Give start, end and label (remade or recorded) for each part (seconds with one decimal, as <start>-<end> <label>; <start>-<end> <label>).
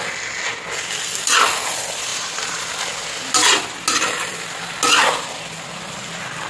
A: 0.0-2.1 recorded; 2.1-2.7 remade; 2.7-6.5 recorded